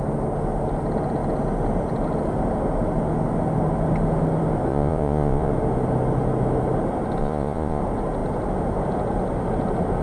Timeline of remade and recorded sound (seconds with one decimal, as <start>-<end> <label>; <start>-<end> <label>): 0.0-4.7 recorded; 4.7-5.5 remade; 5.5-7.2 recorded; 7.2-7.8 remade; 7.8-10.0 recorded